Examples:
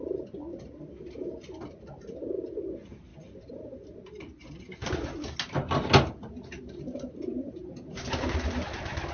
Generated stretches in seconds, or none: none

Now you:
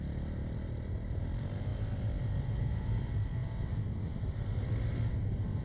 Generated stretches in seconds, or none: none